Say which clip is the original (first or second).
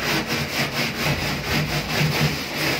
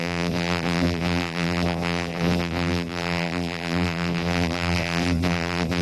first